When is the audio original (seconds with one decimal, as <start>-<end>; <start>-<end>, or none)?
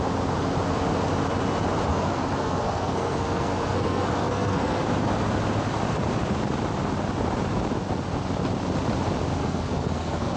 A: 0.0-1.9; 4.8-9.4